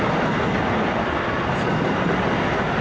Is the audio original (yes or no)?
yes